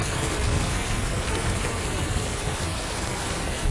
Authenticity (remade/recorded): remade